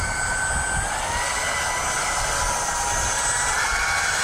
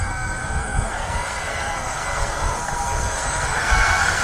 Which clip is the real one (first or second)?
first